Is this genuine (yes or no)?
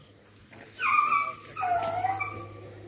yes